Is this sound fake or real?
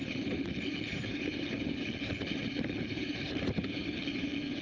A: fake